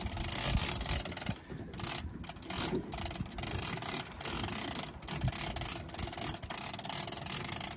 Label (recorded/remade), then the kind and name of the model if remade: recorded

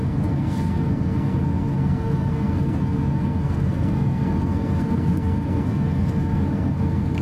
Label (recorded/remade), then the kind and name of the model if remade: remade, codec, SNAC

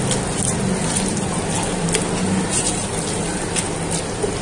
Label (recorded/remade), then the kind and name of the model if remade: recorded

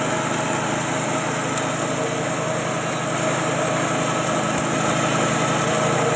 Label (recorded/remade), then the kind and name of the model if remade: recorded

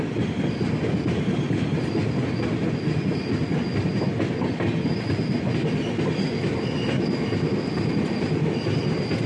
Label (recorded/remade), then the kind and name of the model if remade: recorded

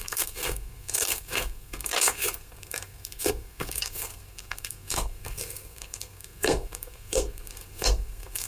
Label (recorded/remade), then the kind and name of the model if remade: remade, codec, SNAC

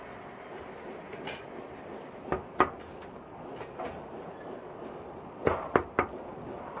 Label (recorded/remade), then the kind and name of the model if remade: recorded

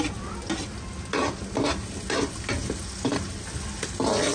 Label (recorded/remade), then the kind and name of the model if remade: recorded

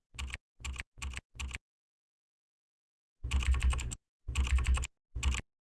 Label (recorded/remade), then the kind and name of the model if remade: recorded